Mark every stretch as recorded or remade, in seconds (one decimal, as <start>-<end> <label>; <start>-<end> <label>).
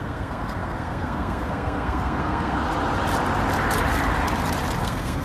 0.0-2.6 remade; 2.6-4.8 recorded; 4.8-5.2 remade